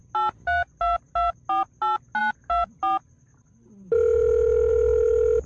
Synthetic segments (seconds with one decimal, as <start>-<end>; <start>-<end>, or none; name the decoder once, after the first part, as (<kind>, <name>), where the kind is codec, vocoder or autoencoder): none